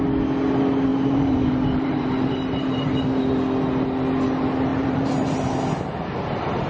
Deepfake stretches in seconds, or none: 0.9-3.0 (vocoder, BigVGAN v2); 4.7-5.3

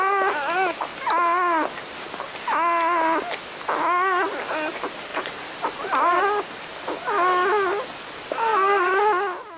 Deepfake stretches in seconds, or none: 5.1-6.2 (vocoder, BigVGAN v2)

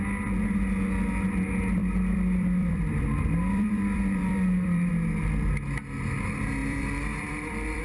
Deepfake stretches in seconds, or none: 1.8-4.9 (vocoder, BigVGAN v2); 6.6-7.8

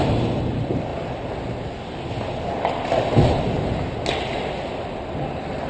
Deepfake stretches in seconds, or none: none

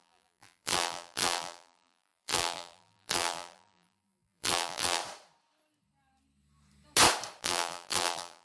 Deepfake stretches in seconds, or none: 0.0-5.0 (vocoder, BigVGAN v2); 7.4-8.4